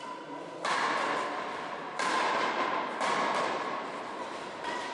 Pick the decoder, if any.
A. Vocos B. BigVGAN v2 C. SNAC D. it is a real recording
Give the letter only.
D